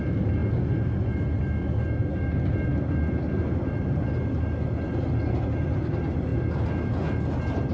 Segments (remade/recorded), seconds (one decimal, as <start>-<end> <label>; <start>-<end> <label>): 0.0-7.7 recorded